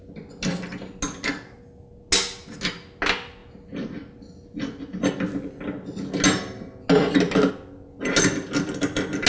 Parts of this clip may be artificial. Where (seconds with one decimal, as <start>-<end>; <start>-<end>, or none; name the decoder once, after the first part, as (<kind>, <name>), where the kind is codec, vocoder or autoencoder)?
none